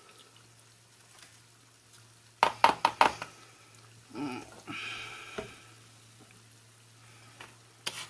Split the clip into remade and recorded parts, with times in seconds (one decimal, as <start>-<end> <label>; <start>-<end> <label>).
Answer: 0.0-8.1 recorded